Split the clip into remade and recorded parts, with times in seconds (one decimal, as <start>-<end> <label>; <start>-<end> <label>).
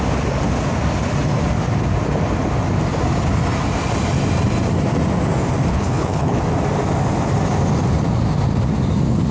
0.0-5.7 recorded; 5.7-6.4 remade; 6.4-9.3 recorded